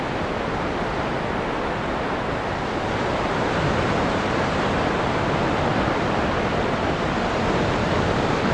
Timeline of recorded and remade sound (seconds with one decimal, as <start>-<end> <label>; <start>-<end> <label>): 0.0-7.8 recorded; 7.8-8.5 remade